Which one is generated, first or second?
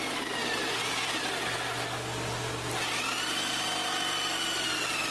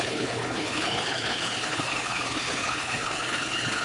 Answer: second